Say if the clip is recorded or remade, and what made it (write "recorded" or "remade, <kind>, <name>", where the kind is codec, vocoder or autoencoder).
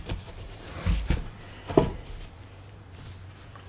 remade, vocoder, BigVGAN v2